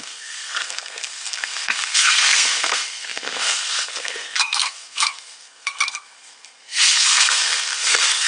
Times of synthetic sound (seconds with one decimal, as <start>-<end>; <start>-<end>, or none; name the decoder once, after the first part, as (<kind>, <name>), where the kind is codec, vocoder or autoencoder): 0.0-8.3 (codec, SNAC)